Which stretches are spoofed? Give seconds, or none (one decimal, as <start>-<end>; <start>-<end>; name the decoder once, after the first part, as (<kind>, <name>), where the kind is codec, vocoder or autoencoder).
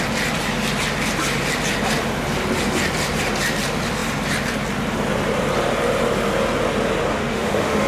7.1-7.9 (autoencoder, DAC-VAE)